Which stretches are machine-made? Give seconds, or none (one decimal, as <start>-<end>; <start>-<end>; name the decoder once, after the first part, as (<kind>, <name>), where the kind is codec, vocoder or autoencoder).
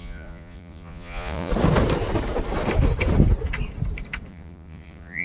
0.0-1.5 (vocoder, Vocos); 4.3-5.2